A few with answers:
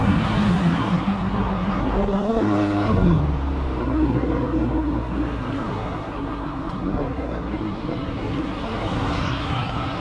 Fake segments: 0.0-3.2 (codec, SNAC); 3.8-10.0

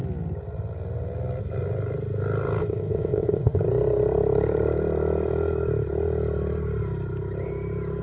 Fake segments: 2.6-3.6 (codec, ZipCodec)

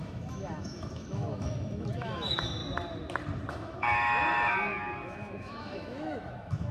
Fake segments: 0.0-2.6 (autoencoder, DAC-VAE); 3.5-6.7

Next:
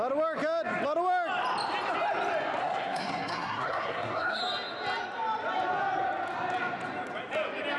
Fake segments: 2.6-4.4 (codec, SNAC)